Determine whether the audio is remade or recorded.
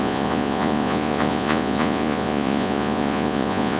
remade